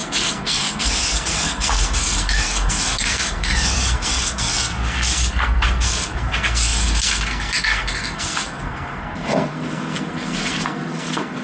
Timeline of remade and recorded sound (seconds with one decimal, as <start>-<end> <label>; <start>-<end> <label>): 0.0-11.4 remade